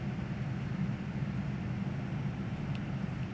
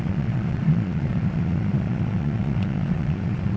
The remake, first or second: second